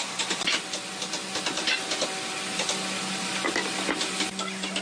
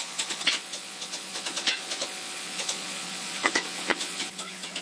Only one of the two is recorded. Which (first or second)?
first